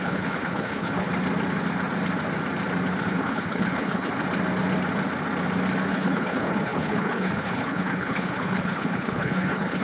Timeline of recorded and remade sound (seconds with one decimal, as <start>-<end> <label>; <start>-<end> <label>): 0.0-1.1 remade; 1.1-3.0 recorded; 3.0-4.1 remade; 4.1-5.9 recorded; 5.9-9.8 remade